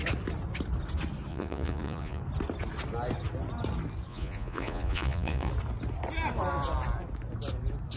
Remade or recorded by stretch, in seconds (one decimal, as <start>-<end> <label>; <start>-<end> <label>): 0.0-1.3 recorded; 1.3-2.2 remade; 2.2-4.1 recorded; 4.1-5.5 remade; 5.5-8.0 recorded